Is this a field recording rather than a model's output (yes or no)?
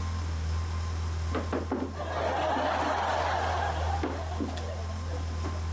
yes